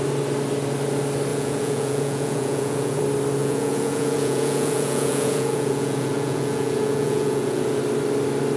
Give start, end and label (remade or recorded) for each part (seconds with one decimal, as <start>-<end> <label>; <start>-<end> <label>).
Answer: 0.0-1.3 recorded; 1.3-3.0 remade; 3.0-3.4 recorded; 3.4-7.8 remade; 7.8-8.6 recorded